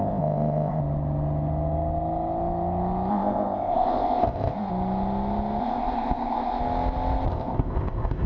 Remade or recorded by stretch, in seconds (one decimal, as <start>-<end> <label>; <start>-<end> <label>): 0.0-0.8 remade; 0.8-3.1 recorded; 3.1-4.7 remade; 4.7-5.6 recorded; 5.6-6.6 remade; 6.6-7.3 recorded; 7.3-8.3 remade